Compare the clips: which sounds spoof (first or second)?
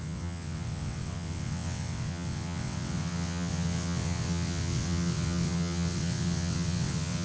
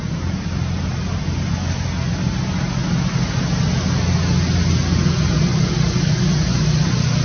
first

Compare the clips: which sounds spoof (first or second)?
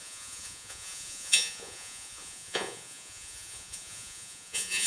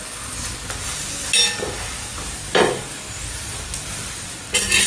first